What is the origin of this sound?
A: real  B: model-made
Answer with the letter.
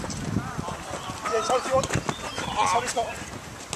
A